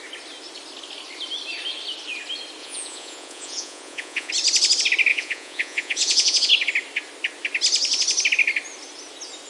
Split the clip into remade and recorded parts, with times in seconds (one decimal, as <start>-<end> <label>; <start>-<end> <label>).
0.0-2.6 recorded; 2.6-4.3 remade; 4.3-5.1 recorded; 5.1-6.5 remade; 6.5-9.5 recorded